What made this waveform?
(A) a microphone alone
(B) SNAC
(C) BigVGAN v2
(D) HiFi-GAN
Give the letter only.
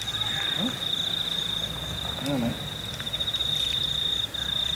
A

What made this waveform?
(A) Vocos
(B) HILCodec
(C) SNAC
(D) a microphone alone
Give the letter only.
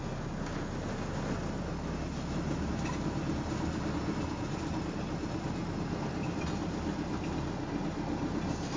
D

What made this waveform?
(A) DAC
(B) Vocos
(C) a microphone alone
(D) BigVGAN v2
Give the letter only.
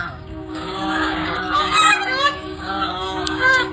A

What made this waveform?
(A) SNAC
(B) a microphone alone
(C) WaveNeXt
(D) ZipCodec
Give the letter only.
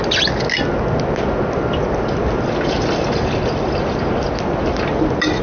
B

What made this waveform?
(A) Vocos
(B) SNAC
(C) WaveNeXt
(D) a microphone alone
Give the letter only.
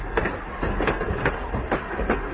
D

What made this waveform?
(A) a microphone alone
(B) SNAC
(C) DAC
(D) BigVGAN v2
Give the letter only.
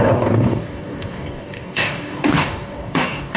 C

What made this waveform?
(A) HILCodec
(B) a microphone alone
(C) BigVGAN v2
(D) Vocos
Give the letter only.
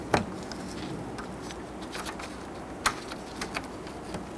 B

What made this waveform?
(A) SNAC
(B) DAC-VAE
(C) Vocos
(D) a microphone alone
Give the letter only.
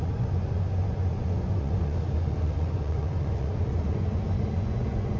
C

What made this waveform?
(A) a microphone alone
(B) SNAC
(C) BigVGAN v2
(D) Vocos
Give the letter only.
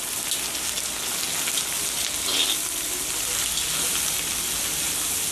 A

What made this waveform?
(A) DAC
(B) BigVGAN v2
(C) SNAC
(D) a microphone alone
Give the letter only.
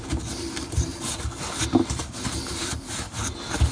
D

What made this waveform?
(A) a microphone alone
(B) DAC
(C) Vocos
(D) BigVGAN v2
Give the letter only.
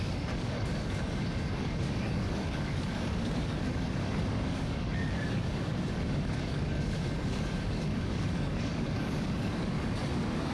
B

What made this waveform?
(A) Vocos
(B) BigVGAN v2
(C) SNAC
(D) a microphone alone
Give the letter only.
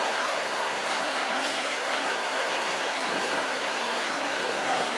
C